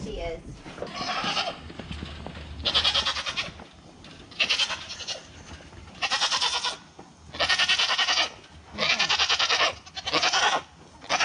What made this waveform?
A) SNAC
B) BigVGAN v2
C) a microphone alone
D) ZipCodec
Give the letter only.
C